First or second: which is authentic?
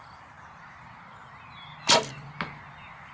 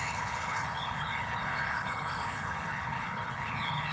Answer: first